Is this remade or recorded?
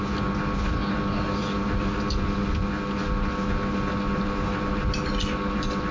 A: recorded